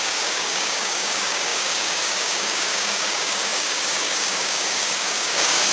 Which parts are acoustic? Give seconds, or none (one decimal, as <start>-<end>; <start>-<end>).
none